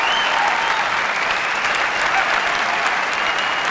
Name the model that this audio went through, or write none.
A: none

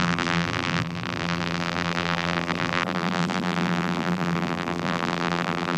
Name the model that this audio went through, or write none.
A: vocoder, BigVGAN v2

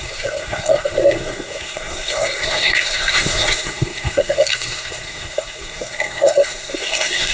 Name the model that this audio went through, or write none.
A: codec, SNAC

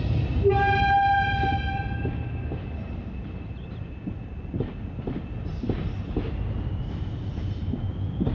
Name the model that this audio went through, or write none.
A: none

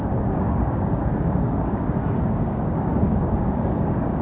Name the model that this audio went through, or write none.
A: codec, DAC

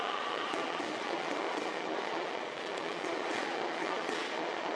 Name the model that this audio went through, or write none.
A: vocoder, Vocos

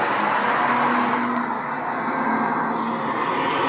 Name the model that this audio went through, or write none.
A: none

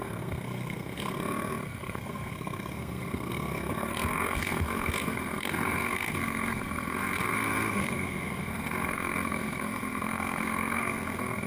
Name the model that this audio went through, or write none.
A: codec, SNAC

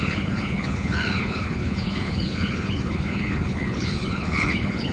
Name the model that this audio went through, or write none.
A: codec, HILCodec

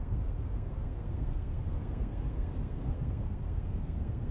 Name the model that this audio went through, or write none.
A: codec, SNAC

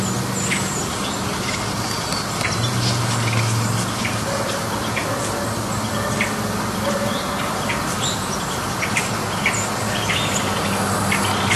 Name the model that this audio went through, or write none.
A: none